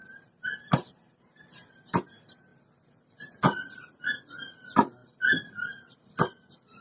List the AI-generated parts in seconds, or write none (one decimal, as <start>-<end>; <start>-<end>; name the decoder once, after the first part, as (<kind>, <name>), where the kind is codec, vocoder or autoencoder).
0.0-2.1 (vocoder, BigVGAN v2)